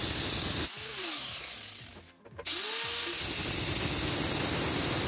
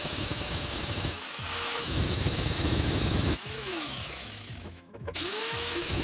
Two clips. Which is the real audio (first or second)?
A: first